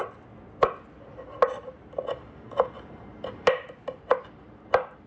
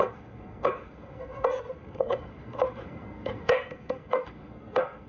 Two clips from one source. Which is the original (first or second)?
first